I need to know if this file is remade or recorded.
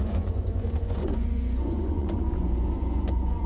remade